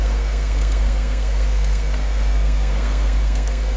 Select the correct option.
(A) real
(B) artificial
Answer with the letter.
B